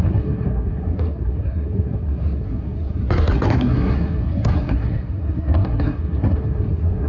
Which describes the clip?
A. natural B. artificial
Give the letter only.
B